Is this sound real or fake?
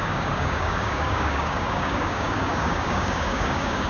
fake